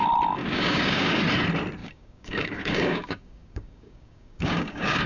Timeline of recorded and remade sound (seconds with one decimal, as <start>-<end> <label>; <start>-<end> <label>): 0.0-0.4 recorded; 0.4-1.2 remade; 1.2-1.8 recorded; 1.8-5.1 remade